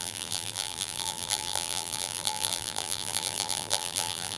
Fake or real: fake